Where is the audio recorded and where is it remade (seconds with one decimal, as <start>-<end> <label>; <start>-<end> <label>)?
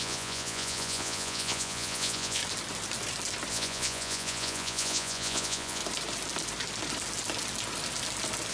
0.0-2.4 remade; 2.4-3.5 recorded; 3.5-5.8 remade; 5.8-8.5 recorded